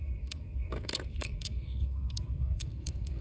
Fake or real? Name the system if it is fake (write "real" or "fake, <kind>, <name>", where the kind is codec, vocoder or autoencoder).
fake, codec, SNAC